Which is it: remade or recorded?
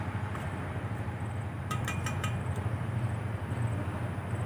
remade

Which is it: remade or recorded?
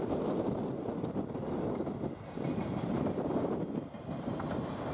recorded